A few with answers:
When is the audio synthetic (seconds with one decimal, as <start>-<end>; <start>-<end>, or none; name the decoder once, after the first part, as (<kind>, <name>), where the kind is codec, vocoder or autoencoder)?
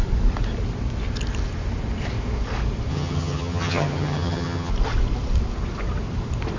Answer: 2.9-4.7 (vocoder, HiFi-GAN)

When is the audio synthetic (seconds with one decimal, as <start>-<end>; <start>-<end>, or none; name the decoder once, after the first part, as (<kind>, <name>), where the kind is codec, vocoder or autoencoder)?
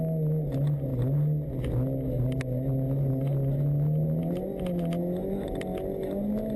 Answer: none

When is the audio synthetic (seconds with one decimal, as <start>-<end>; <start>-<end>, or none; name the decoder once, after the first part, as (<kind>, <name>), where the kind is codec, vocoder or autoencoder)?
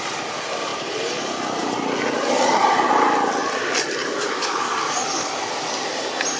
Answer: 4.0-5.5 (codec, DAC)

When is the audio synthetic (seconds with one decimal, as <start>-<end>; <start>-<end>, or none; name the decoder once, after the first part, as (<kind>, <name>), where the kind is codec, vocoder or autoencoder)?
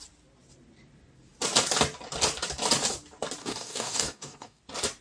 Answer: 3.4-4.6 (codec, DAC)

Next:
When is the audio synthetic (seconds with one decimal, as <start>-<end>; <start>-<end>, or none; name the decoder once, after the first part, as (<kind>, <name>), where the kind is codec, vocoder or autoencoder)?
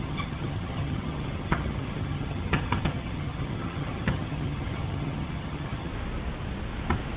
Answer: 0.0-5.9 (vocoder, HiFi-GAN)